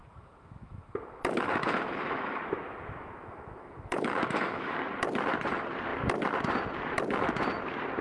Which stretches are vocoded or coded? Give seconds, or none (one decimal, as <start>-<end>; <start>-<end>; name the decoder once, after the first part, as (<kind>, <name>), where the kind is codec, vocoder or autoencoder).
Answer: 0.0-4.8 (autoencoder, DAC-VAE)